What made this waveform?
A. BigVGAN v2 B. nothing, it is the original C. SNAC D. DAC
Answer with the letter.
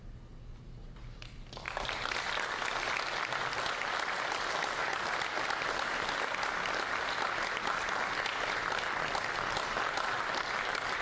B